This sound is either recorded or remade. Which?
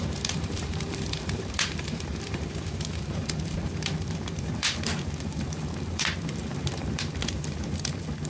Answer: remade